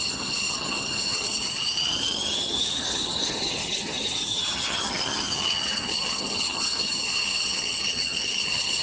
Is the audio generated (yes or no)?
yes